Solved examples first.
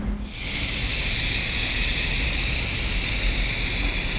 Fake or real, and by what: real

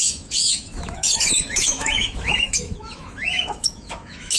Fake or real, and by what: fake, autoencoder, DAC-VAE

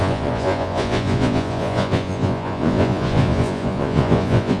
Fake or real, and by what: fake, vocoder, Vocos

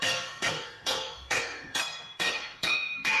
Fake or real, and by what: fake, codec, SNAC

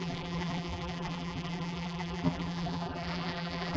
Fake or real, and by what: fake, vocoder, BigVGAN v2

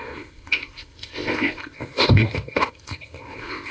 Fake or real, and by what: fake, codec, ZipCodec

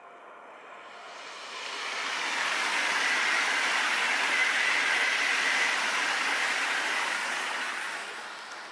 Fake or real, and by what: real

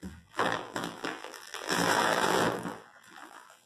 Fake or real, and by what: fake, vocoder, BigVGAN v2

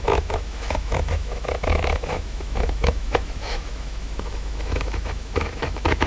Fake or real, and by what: fake, autoencoder, DAC-VAE